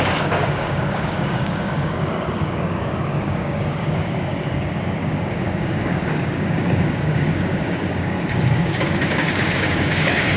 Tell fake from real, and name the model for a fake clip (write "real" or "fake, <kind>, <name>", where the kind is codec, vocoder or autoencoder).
fake, codec, DAC